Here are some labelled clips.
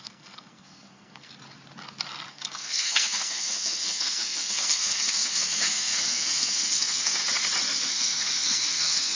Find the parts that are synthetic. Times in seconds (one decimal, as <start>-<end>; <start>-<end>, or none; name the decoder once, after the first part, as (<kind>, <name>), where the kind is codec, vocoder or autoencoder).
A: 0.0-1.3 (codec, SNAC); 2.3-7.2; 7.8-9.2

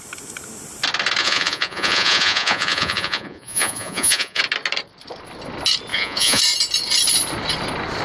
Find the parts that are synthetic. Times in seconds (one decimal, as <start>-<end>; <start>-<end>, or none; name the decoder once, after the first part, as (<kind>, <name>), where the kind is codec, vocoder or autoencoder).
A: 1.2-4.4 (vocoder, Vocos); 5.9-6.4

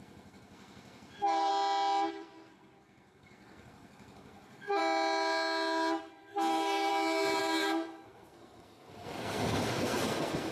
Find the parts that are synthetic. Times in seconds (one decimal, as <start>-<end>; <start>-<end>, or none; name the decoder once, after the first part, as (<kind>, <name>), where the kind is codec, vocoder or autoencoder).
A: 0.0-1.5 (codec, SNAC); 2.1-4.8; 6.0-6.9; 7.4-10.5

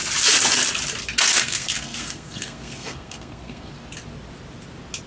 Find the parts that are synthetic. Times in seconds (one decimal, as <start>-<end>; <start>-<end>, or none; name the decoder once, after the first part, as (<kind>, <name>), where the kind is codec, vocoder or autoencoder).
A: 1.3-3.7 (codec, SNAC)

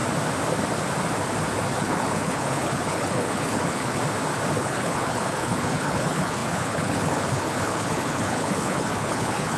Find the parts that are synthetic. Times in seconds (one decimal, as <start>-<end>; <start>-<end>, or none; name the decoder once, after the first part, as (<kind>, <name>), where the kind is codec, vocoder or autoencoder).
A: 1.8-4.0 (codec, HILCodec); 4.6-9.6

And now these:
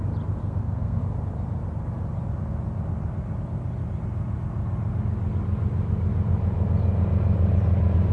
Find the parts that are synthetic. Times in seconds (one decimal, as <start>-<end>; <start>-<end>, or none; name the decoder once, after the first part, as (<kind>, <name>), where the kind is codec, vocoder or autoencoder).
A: 0.4-1.0 (codec, SNAC)

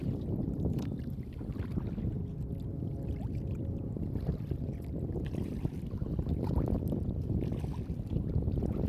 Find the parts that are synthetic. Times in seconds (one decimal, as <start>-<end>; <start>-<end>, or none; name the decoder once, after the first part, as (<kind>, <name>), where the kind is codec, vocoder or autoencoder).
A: 0.0-1.1 (vocoder, BigVGAN v2); 2.7-7.7

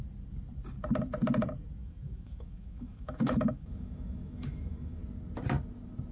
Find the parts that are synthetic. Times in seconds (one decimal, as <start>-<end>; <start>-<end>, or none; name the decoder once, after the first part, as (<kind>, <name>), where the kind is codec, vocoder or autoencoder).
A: 1.8-5.0 (autoencoder, DAC-VAE)